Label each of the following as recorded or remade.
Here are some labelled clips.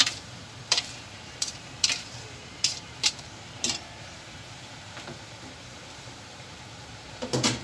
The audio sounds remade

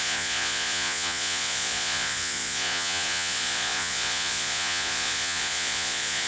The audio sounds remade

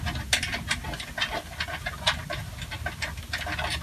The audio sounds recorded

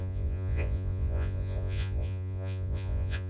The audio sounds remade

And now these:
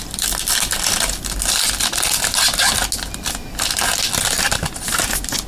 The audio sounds recorded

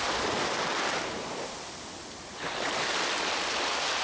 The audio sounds recorded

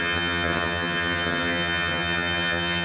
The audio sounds remade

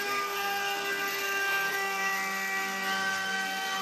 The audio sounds remade